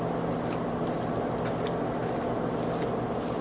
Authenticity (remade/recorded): recorded